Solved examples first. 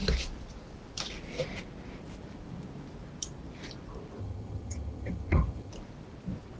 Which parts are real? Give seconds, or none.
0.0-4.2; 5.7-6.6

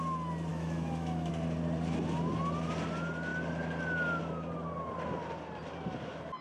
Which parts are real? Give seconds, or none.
0.0-0.5; 1.3-6.4

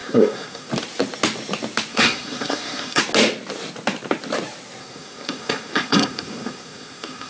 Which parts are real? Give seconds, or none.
0.7-1.9; 3.0-4.8

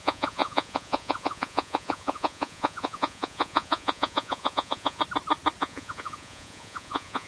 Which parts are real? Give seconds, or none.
5.0-5.6

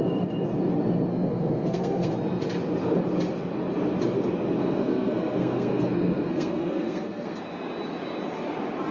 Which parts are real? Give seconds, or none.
0.0-1.1; 2.1-4.6; 7.4-8.9

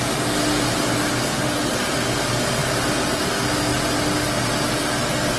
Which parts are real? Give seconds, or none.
0.0-5.4

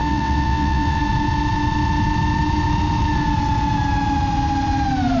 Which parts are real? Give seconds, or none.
1.0-5.2

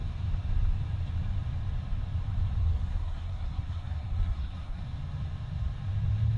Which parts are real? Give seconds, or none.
0.0-2.6; 4.8-6.4